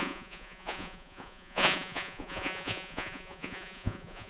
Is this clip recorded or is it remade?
remade